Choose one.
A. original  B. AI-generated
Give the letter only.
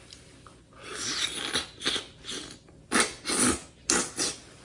A